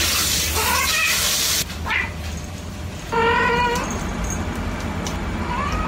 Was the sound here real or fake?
real